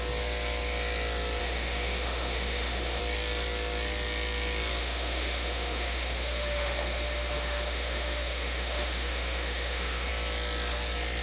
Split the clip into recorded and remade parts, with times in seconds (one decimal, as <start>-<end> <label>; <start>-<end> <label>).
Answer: 0.0-1.4 recorded; 1.4-3.0 remade; 3.0-4.8 recorded; 4.8-10.1 remade; 10.1-11.2 recorded